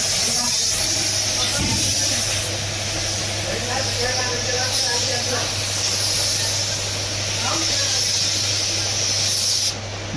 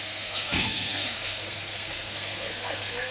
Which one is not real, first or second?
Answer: second